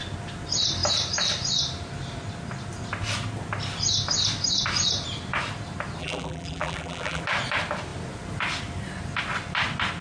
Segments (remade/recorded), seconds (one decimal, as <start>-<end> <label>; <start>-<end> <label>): 0.0-6.0 recorded; 6.0-7.2 remade; 7.2-10.0 recorded